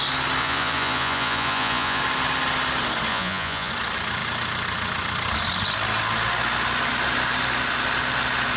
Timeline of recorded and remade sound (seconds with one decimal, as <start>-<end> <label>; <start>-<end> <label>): 0.0-0.4 recorded; 0.4-2.0 remade; 2.0-3.1 recorded; 3.1-3.7 remade; 3.7-8.6 recorded